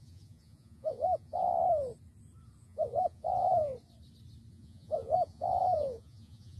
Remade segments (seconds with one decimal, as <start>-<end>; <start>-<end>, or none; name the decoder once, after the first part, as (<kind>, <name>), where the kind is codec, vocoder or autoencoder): 0.0-1.5 (vocoder, Vocos); 2.6-3.7; 4.5-6.6

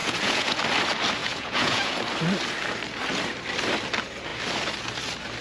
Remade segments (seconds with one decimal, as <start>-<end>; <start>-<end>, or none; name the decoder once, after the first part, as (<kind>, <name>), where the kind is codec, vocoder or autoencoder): 0.0-0.6 (vocoder, Vocos); 1.2-2.0